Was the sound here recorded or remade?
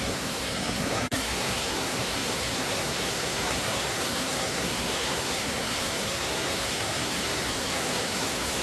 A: remade